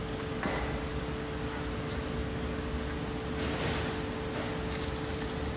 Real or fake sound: real